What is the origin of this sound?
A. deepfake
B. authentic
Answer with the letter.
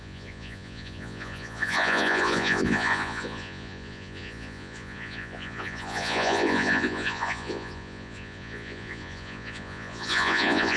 A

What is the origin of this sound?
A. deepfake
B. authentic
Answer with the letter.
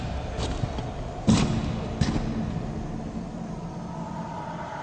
B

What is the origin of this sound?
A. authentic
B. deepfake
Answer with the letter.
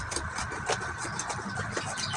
A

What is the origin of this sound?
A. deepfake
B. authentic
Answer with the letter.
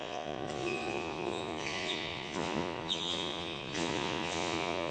A